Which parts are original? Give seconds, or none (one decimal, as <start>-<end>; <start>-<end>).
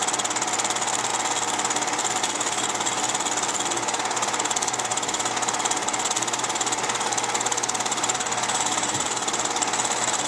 0.0-8.0; 9.1-10.3